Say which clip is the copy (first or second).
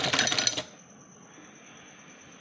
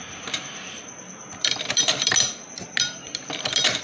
second